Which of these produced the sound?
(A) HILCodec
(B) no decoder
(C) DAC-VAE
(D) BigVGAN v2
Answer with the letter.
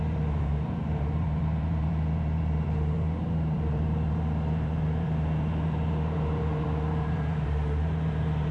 D